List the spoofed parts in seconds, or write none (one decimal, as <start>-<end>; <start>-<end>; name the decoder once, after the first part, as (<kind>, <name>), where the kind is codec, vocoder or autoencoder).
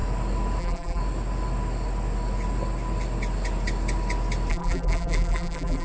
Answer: 0.6-1.0 (vocoder, BigVGAN v2); 4.5-5.8